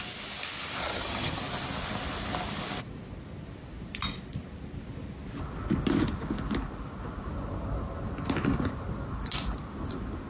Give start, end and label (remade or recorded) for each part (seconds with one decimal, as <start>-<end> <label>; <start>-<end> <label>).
0.0-0.8 recorded; 0.8-1.4 remade; 1.4-10.3 recorded